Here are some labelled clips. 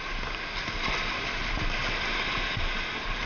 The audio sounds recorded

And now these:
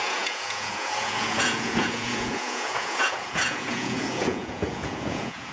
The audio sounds remade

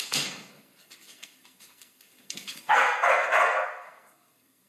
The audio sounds remade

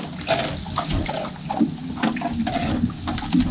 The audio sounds recorded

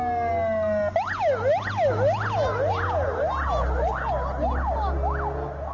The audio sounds recorded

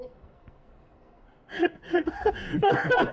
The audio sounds remade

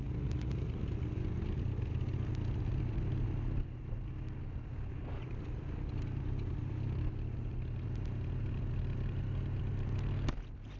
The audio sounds recorded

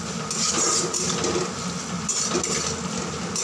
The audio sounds recorded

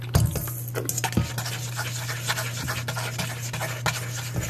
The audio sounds recorded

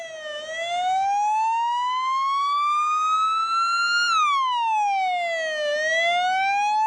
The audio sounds recorded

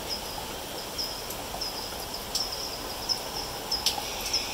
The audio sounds recorded